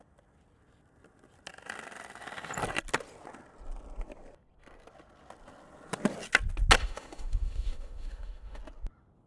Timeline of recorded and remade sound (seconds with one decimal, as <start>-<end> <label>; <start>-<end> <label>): 0.0-6.8 recorded; 6.8-8.6 remade; 8.6-9.3 recorded